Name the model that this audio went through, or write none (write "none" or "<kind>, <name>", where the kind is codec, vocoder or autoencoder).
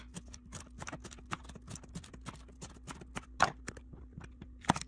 none